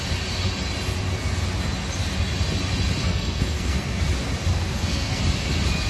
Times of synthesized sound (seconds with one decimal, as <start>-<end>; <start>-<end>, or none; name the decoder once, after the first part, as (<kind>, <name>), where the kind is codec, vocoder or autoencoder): 3.0-4.0 (codec, SNAC); 4.5-5.2